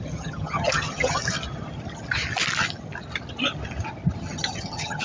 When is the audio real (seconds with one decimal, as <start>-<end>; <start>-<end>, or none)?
1.2-4.2